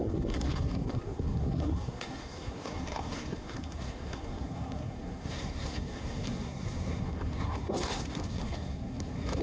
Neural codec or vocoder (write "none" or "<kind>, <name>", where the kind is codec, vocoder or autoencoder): codec, SNAC